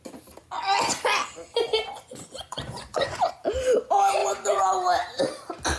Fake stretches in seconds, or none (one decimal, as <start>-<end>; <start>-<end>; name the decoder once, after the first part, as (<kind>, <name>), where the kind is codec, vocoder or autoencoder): 1.6-3.2 (vocoder, Vocos); 4.2-4.7